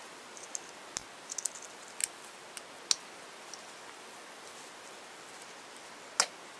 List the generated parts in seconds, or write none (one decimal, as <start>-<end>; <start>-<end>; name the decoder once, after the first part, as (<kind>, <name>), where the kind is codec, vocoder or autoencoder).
none